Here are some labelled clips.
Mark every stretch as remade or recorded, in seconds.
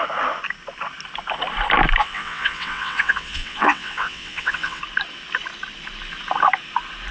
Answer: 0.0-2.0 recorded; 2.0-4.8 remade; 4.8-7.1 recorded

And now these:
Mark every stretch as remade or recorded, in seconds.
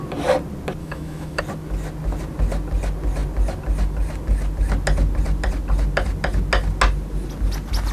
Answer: 0.0-0.8 recorded; 0.8-1.4 remade; 1.4-7.9 recorded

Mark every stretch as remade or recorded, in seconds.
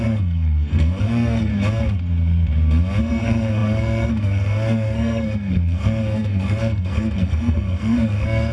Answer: 0.0-1.5 remade; 1.5-3.0 recorded; 3.0-8.5 remade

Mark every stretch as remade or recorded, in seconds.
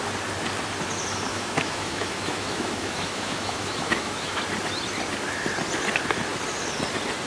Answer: 0.0-1.3 recorded; 1.3-4.4 remade; 4.4-7.3 recorded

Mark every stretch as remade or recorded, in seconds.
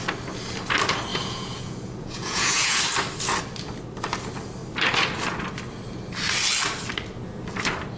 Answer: 0.0-1.1 recorded; 1.1-2.8 remade; 2.8-8.0 recorded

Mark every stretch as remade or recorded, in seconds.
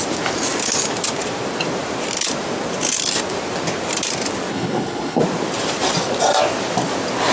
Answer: 0.0-4.5 recorded; 4.5-5.2 remade; 5.2-7.3 recorded